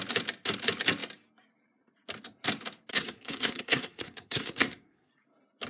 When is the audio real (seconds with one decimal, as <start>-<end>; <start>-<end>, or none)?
0.0-2.9; 5.1-5.7

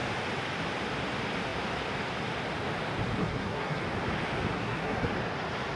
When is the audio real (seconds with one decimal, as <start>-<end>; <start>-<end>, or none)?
0.0-3.2; 3.8-4.5; 5.1-5.8

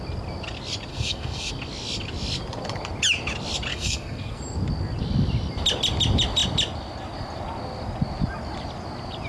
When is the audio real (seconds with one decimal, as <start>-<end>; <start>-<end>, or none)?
0.0-0.9; 1.5-3.7; 4.4-9.3

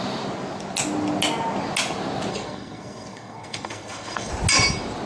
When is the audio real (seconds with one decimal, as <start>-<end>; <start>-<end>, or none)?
0.0-2.3; 4.3-5.1

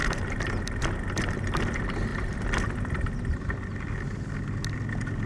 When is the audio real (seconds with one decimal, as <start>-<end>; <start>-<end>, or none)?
0.0-5.3

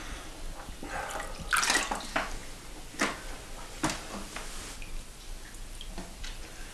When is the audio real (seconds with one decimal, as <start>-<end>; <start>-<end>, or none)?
0.0-6.7